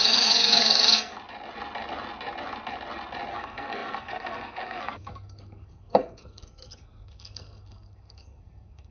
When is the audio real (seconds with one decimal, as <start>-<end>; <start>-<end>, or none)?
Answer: 1.1-3.3